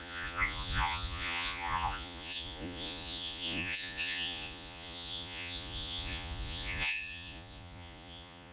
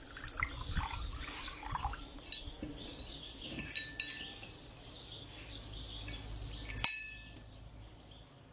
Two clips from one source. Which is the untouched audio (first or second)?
second